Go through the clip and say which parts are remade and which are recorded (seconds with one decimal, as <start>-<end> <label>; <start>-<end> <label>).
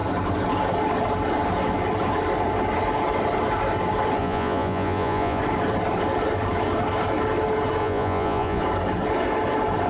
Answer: 0.0-4.2 recorded; 4.2-5.4 remade; 5.4-7.8 recorded; 7.8-8.6 remade; 8.6-9.9 recorded